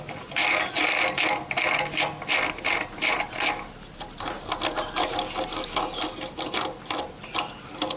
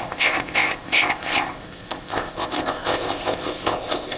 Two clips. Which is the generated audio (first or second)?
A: second